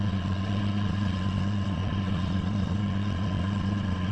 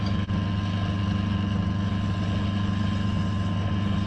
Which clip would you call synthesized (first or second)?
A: first